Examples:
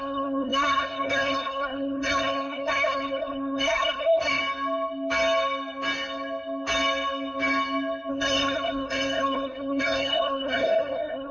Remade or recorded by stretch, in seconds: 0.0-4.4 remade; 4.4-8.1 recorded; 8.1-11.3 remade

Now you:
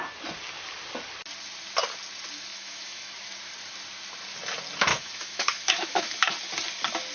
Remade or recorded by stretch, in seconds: 0.0-2.5 recorded; 2.5-3.1 remade; 3.1-4.9 recorded; 4.9-6.3 remade; 6.3-7.1 recorded

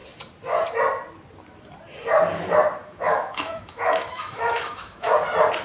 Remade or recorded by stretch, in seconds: 0.0-2.8 recorded; 2.8-5.1 remade; 5.1-5.6 recorded

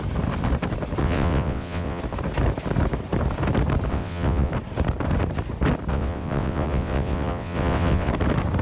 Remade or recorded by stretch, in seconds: 0.0-1.0 recorded; 1.0-2.0 remade; 2.0-3.9 recorded; 3.9-4.5 remade; 4.5-5.9 recorded; 5.9-8.1 remade; 8.1-8.6 recorded

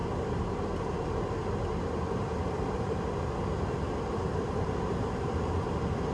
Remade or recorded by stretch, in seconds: 0.0-6.1 recorded

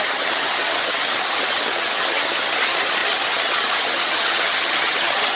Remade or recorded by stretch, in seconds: 0.0-5.4 remade

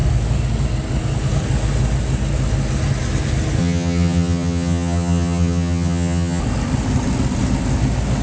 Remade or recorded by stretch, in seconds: 0.0-3.6 recorded; 3.6-6.4 remade; 6.4-8.2 recorded